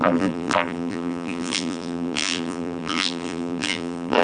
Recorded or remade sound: remade